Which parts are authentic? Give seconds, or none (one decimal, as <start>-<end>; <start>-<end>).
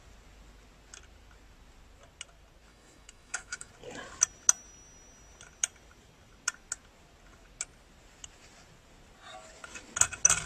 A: 0.0-2.7; 3.7-10.5